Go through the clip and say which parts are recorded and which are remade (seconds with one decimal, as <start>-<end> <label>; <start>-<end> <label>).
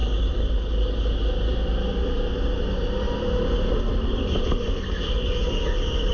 0.0-6.1 recorded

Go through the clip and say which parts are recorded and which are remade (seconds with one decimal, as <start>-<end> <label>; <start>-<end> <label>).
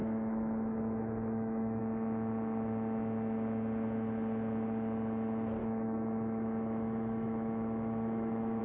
0.0-1.8 remade; 1.8-5.6 recorded; 5.6-8.6 remade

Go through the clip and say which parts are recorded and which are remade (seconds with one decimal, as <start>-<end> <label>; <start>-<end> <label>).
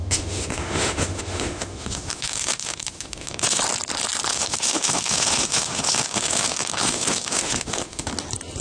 0.0-3.6 remade; 3.6-4.3 recorded; 4.3-8.1 remade; 8.1-8.6 recorded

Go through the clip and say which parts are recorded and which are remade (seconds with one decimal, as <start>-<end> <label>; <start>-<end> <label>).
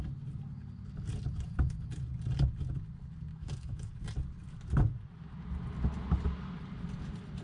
0.0-3.3 recorded; 3.3-3.9 remade; 3.9-7.4 recorded